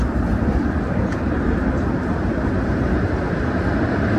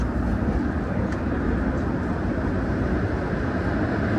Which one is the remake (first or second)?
first